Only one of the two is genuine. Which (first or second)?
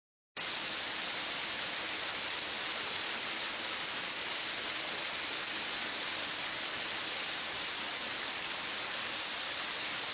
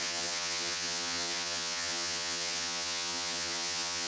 first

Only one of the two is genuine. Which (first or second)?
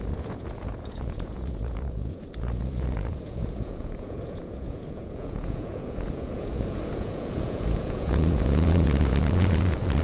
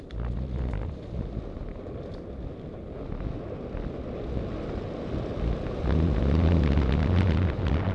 second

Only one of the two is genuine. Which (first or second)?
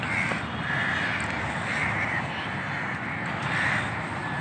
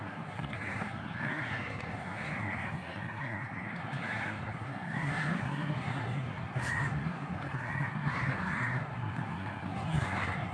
first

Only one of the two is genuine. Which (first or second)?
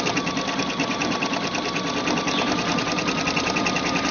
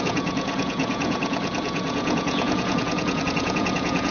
first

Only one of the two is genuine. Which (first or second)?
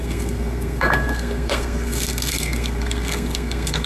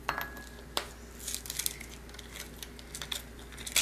second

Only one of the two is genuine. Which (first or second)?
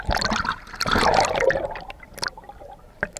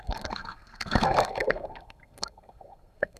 first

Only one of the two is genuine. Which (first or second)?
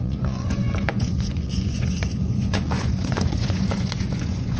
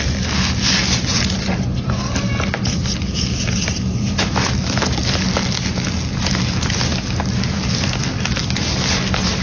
second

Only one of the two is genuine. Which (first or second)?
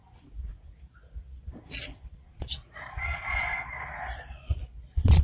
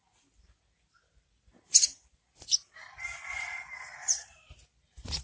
second